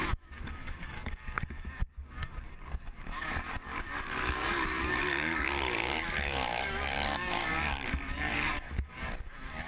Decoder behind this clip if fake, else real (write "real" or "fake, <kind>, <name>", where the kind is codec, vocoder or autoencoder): fake, codec, DAC